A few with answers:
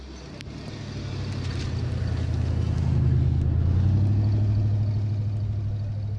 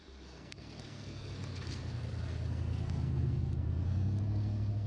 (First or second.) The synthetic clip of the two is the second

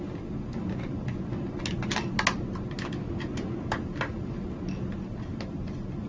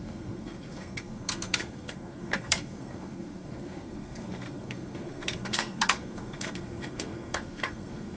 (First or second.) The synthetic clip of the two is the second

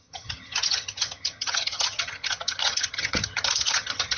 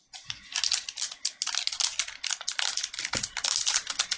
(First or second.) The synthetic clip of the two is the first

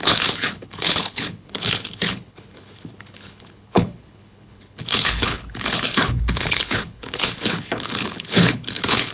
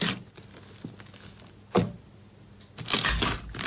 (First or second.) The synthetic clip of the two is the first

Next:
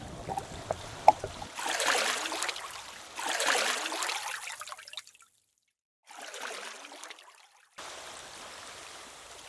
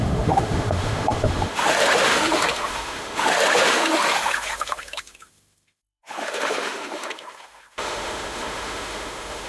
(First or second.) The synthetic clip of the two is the second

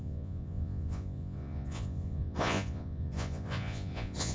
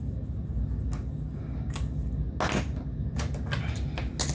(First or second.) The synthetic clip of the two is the first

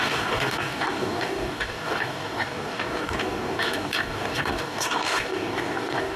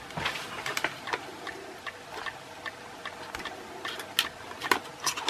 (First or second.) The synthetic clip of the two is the first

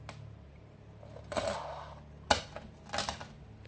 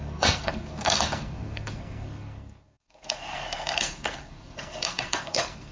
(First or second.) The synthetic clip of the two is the second